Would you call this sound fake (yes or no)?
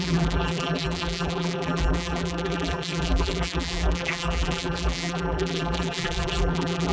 yes